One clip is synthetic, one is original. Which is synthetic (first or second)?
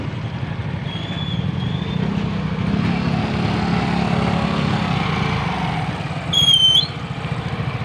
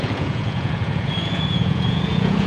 second